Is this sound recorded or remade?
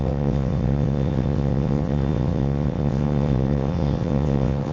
remade